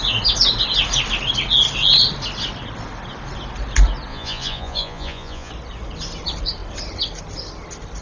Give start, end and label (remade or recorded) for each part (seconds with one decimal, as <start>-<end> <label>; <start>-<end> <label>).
0.0-4.1 recorded; 4.1-5.5 remade; 5.5-8.0 recorded